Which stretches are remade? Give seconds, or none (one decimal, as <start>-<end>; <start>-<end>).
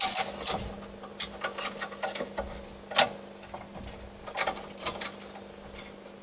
none